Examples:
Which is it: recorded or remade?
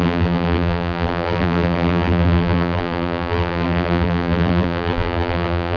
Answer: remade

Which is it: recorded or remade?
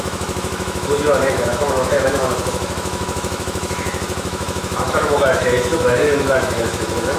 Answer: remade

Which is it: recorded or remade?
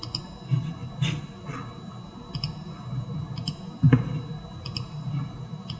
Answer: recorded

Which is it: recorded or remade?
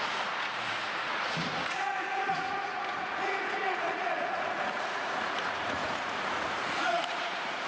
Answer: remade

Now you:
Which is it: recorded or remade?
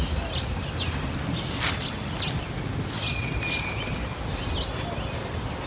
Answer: recorded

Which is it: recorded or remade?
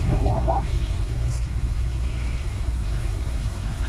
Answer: remade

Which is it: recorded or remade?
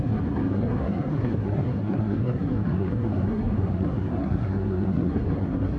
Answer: remade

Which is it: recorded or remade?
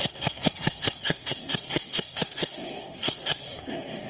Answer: remade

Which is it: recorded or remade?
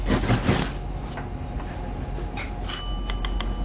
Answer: recorded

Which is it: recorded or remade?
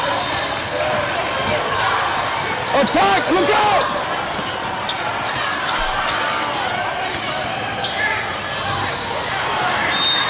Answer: recorded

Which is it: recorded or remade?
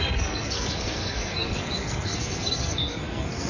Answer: remade